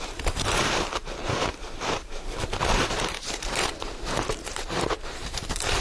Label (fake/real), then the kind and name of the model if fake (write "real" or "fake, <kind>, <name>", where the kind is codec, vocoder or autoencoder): fake, vocoder, BigVGAN v2